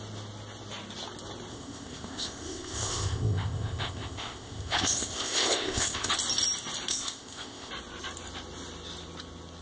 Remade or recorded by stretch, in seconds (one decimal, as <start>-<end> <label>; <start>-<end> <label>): 0.0-1.5 recorded; 1.5-6.1 remade; 6.1-6.9 recorded; 6.9-7.7 remade; 7.7-9.6 recorded

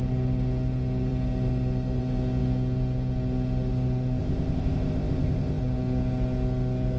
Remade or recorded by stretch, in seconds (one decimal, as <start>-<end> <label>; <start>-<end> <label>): 0.0-4.2 recorded; 4.2-5.6 remade; 5.6-7.0 recorded

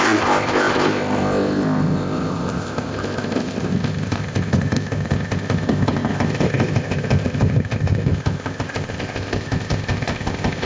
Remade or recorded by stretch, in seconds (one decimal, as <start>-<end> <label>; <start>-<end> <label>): 0.0-10.7 remade

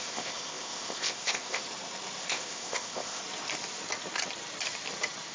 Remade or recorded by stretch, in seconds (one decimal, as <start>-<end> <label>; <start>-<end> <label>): 0.0-1.6 remade; 1.6-2.2 recorded; 2.2-3.2 remade; 3.2-5.3 recorded

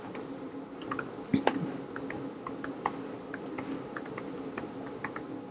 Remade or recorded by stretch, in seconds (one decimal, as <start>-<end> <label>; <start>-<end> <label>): 0.0-5.5 recorded